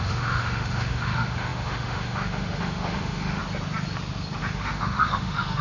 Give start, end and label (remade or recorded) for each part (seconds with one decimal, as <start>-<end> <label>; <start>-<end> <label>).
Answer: 0.0-3.4 remade; 3.4-4.4 recorded; 4.4-5.6 remade